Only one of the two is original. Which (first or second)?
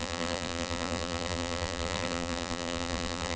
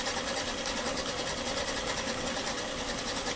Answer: second